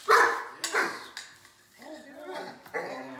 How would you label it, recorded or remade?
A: recorded